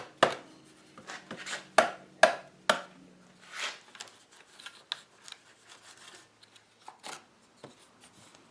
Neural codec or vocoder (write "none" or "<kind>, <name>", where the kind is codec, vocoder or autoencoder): none